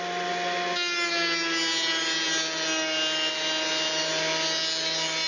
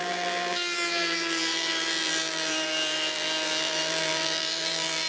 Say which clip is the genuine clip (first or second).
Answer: first